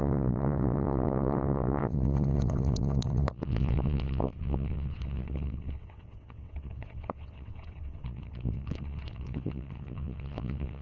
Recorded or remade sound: remade